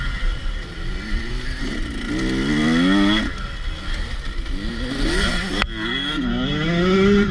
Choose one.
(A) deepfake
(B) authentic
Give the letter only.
B